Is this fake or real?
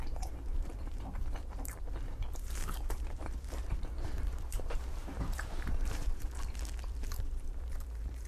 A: fake